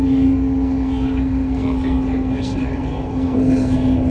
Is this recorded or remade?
remade